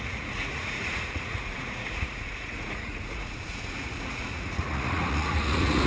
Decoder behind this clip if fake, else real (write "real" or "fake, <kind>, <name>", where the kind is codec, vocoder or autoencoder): fake, vocoder, Vocos